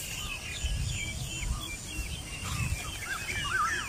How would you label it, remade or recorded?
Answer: recorded